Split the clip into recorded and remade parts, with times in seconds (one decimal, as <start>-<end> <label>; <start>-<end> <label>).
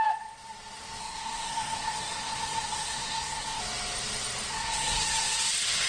0.0-1.0 recorded; 1.0-3.6 remade; 3.6-4.5 recorded; 4.5-5.5 remade; 5.5-5.9 recorded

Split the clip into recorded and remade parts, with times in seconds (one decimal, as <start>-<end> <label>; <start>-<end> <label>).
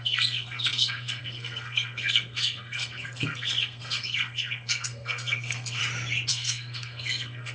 0.0-5.8 remade; 5.8-6.3 recorded; 6.3-7.5 remade